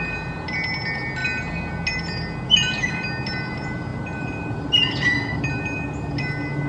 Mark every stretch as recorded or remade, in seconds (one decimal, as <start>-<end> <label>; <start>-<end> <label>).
0.0-6.7 recorded